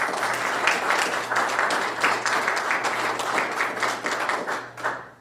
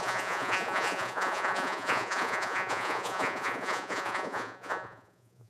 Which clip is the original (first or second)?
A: first